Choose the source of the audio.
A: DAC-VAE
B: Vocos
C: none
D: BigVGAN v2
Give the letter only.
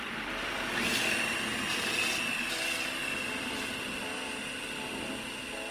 C